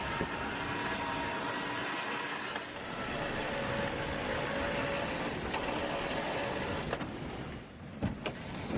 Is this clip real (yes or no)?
yes